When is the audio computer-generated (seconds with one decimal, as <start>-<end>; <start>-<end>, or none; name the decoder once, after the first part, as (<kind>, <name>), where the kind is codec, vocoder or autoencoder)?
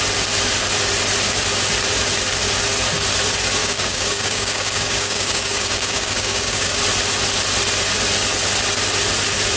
3.6-6.8 (codec, DAC)